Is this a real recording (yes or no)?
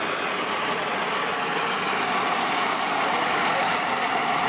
yes